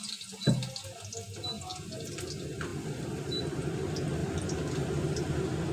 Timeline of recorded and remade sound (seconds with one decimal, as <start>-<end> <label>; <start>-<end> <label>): 0.0-2.7 recorded; 2.7-3.4 remade; 3.4-4.2 recorded; 4.2-5.7 remade